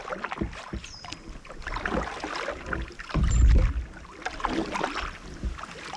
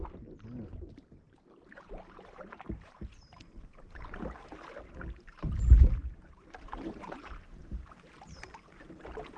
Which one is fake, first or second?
second